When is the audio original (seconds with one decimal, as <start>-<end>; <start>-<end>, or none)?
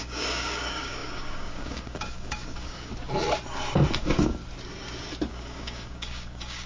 2.9-4.0; 4.4-5.3